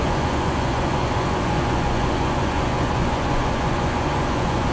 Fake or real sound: fake